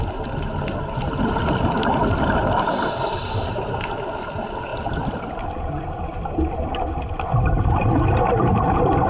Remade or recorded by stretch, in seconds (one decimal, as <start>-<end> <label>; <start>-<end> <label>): 0.0-9.1 remade